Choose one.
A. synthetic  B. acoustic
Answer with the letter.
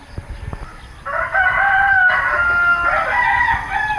B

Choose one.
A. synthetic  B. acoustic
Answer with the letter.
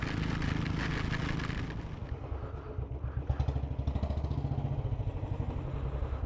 B